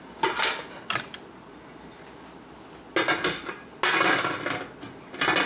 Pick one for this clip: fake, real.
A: real